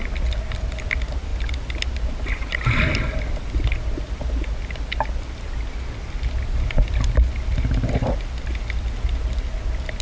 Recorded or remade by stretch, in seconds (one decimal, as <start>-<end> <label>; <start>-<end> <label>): 0.0-10.0 recorded